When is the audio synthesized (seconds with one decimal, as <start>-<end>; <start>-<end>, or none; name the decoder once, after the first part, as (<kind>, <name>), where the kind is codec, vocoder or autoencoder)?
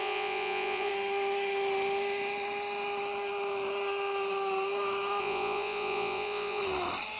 0.0-0.9 (vocoder, Vocos); 5.2-6.6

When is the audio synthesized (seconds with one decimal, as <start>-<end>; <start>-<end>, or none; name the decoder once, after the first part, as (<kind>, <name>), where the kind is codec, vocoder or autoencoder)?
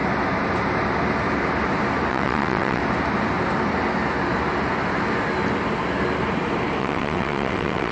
2.1-2.8 (vocoder, WaveNeXt); 6.8-7.9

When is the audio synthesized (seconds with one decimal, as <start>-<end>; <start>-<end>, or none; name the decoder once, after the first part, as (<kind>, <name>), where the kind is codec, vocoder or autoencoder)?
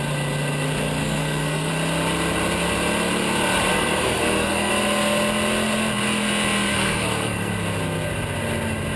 1.0-1.7 (codec, SNAC); 3.7-4.7; 6.7-7.5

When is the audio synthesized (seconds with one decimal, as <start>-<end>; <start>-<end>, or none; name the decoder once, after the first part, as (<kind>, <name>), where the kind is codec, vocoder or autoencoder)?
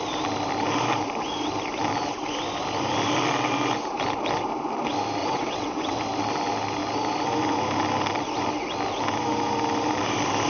5.2-6.0 (vocoder, WaveNeXt)